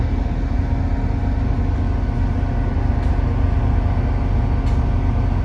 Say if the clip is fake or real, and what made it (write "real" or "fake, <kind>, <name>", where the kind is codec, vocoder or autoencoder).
real